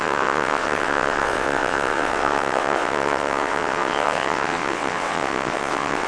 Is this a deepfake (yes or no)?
yes